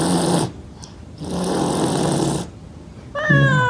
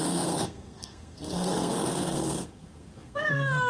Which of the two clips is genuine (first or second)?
first